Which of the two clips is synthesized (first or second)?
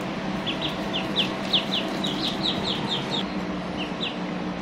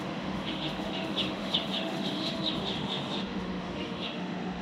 second